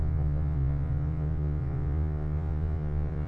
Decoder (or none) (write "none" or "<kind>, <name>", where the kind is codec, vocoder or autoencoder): vocoder, Vocos